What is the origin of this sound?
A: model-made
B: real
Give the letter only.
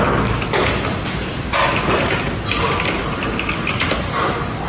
B